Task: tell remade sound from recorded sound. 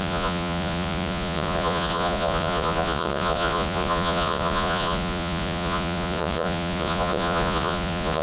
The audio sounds remade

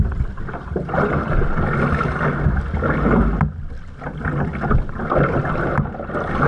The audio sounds recorded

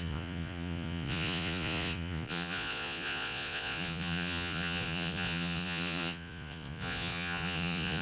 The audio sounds remade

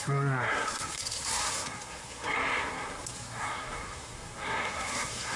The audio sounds remade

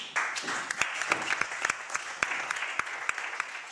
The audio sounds remade